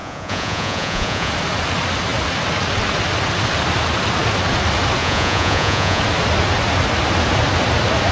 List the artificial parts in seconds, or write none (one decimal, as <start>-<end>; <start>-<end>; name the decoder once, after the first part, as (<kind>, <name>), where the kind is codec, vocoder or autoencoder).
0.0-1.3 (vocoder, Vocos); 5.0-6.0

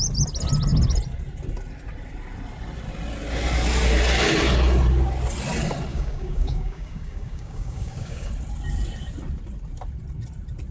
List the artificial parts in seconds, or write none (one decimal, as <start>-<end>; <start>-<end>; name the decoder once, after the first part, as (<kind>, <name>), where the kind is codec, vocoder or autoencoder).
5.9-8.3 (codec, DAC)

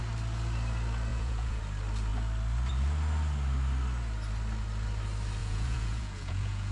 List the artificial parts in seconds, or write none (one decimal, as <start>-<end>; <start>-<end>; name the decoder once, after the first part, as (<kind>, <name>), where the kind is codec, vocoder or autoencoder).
1.1-1.6 (vocoder, Vocos); 5.4-6.7